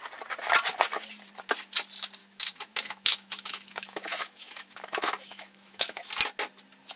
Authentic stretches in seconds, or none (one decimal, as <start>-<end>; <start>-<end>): 0.0-2.2; 6.0-7.0